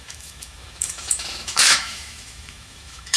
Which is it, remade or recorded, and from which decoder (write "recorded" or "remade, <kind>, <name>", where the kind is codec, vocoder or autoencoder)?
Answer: remade, autoencoder, DAC-VAE